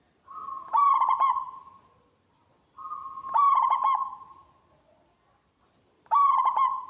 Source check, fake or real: real